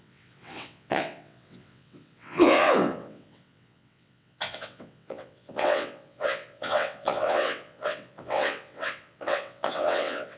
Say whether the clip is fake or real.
fake